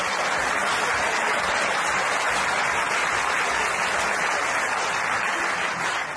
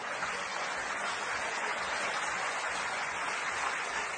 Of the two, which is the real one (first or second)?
first